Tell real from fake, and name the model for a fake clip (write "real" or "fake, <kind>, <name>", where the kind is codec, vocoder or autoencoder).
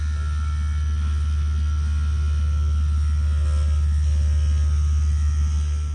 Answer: real